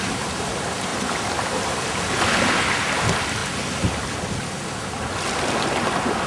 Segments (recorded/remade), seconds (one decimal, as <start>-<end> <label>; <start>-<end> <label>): 0.0-0.9 recorded; 0.9-1.6 remade; 1.6-6.3 recorded